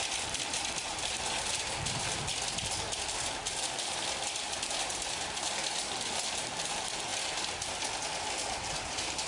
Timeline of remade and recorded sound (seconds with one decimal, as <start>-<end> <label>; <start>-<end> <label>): 0.0-9.3 recorded